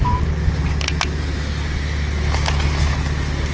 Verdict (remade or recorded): recorded